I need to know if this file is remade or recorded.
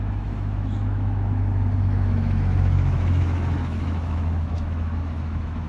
remade